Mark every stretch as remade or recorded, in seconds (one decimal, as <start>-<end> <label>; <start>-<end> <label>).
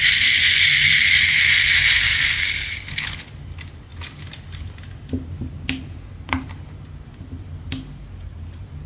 0.0-2.6 recorded; 2.6-3.3 remade; 3.3-8.9 recorded